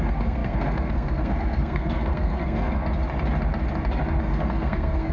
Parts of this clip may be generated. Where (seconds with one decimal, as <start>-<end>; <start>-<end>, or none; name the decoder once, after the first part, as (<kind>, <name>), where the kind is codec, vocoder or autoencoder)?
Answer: 0.0-2.8 (codec, SNAC); 4.2-5.1